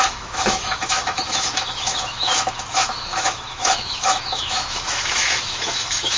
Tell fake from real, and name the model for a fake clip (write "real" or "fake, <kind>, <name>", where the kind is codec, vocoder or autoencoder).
fake, autoencoder, DAC-VAE